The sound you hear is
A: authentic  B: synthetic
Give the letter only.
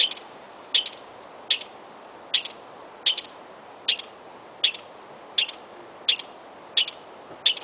A